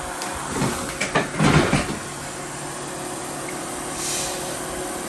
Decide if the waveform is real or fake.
real